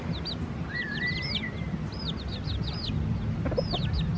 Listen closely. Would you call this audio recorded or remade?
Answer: recorded